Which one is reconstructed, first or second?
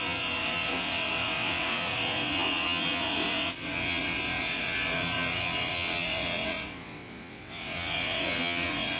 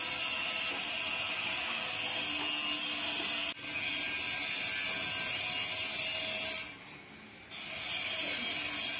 first